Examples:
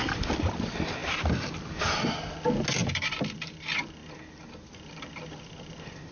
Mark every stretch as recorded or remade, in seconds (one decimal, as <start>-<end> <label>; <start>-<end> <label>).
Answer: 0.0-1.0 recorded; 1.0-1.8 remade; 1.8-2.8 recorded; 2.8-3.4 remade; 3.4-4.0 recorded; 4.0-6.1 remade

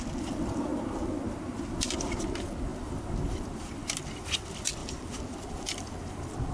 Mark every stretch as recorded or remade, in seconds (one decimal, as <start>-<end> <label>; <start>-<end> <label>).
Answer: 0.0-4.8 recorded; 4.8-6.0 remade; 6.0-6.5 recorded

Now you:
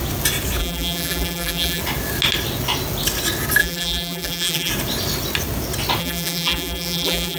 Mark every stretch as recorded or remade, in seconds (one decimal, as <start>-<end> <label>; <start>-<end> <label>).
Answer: 0.0-0.6 recorded; 0.6-1.8 remade; 1.8-3.6 recorded; 3.6-4.7 remade; 4.7-6.0 recorded; 6.0-7.4 remade

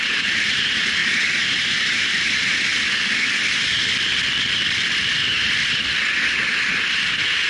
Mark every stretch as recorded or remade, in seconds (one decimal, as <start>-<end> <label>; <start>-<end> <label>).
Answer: 0.0-1.0 remade; 1.0-1.9 recorded; 1.9-2.7 remade; 2.7-7.5 recorded

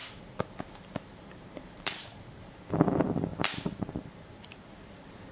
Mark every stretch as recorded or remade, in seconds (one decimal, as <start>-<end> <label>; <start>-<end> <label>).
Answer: 0.0-2.4 remade; 2.4-3.3 recorded; 3.3-4.7 remade; 4.7-5.3 recorded